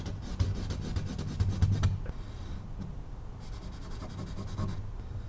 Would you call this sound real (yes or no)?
yes